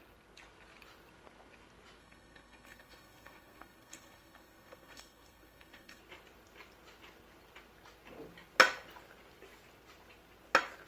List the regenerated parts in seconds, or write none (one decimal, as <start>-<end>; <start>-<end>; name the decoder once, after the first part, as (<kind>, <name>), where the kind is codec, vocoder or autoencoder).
2.0-6.0 (codec, SNAC)